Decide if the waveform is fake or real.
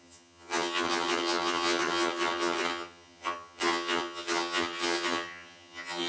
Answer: fake